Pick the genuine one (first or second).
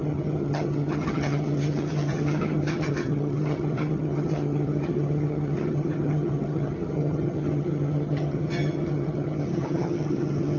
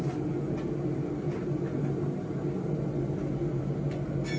second